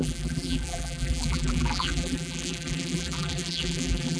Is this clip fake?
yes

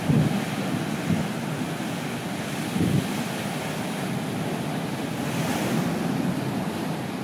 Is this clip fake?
no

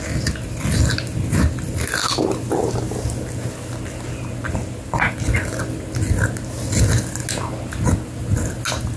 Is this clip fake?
no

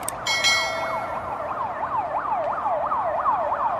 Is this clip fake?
no